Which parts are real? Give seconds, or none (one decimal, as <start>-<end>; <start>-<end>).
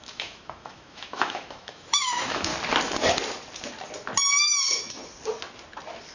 2.5-4.4; 5.0-6.1